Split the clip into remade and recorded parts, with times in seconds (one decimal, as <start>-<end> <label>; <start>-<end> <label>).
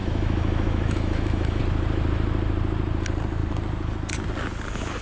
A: 0.0-1.6 remade; 1.6-5.0 recorded